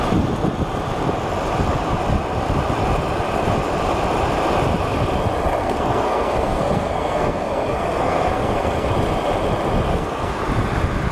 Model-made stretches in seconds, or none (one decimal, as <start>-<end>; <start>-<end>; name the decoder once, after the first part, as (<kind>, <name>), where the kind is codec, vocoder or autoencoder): 5.6-8.9 (codec, SNAC); 9.9-10.4